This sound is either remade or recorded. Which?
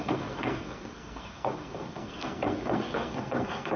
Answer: remade